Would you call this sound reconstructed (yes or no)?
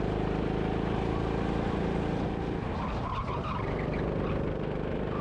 no